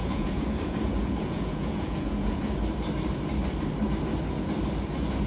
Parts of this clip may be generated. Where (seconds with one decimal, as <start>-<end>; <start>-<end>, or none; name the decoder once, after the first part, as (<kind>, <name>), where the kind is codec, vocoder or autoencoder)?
0.0-2.5 (vocoder, Vocos)